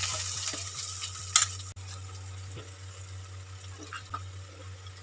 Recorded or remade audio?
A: recorded